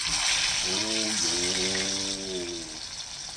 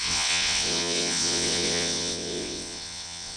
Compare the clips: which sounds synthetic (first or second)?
second